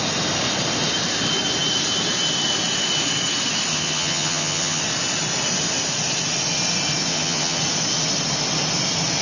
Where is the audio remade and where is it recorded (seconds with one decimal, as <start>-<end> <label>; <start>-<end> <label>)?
0.0-3.7 recorded; 3.7-4.8 remade; 4.8-7.1 recorded; 7.1-7.6 remade; 7.6-9.2 recorded